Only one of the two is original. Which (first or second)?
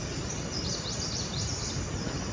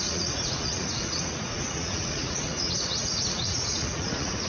first